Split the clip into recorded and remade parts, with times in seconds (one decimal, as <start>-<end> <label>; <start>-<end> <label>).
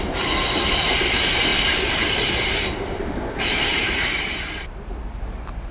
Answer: 0.0-5.7 recorded